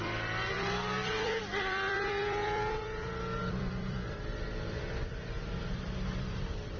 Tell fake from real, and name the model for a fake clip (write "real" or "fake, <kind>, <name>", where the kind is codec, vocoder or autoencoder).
fake, vocoder, BigVGAN v2